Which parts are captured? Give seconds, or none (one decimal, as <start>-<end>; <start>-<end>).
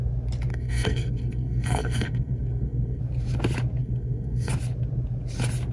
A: 0.0-0.5; 3.0-3.8; 4.5-5.7